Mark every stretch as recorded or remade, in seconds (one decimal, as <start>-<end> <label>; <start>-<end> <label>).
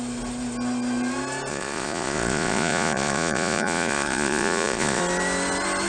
0.0-1.5 recorded; 1.5-5.0 remade; 5.0-5.9 recorded